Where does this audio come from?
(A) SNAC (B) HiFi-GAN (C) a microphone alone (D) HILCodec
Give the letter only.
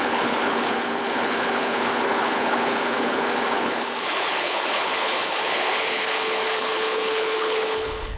D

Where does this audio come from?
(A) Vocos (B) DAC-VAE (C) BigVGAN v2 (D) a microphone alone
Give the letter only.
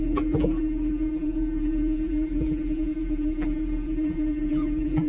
C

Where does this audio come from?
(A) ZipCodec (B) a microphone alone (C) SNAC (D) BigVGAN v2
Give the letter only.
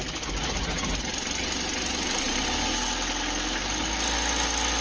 B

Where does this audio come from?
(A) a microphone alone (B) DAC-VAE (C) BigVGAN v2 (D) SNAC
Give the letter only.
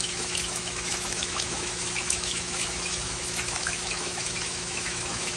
B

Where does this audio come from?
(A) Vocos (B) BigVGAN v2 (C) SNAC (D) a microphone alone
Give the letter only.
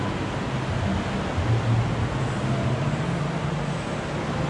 D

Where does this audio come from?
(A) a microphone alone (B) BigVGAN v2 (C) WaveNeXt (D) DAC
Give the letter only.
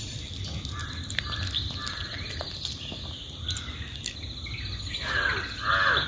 A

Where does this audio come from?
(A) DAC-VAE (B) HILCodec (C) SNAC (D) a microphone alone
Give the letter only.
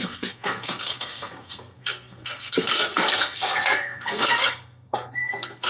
C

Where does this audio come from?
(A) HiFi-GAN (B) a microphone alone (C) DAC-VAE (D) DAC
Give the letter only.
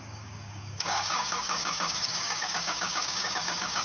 D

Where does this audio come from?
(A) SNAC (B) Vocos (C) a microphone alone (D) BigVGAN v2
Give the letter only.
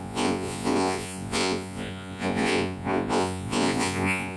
B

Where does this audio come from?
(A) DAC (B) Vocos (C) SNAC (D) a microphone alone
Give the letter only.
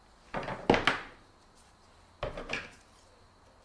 D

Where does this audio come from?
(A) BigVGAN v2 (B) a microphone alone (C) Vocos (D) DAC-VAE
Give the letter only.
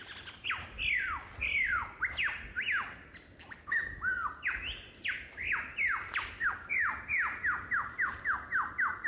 B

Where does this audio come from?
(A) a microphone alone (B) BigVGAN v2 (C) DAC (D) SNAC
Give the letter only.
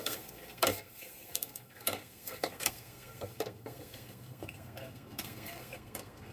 D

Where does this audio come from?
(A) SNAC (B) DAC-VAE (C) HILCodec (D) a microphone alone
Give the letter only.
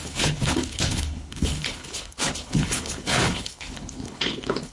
C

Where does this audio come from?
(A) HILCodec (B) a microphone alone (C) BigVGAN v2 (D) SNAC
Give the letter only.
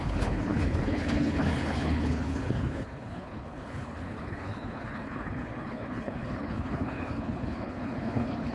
A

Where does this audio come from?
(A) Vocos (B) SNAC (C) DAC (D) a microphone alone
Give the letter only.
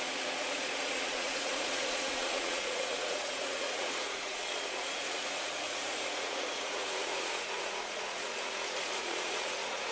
A